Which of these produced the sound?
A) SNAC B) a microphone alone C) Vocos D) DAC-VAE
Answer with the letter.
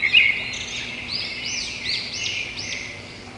B